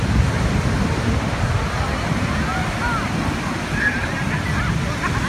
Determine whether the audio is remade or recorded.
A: recorded